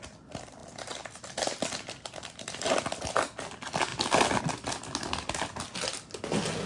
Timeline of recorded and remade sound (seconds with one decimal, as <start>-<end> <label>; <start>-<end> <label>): 0.0-6.7 recorded